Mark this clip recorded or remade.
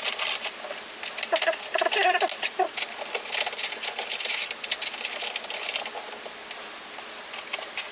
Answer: recorded